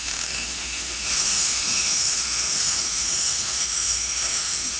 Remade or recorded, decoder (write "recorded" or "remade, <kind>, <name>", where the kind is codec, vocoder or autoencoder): remade, autoencoder, DAC-VAE